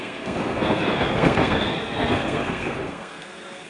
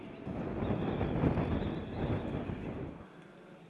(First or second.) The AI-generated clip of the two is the first